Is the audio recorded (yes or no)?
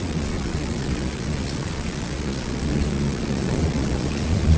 no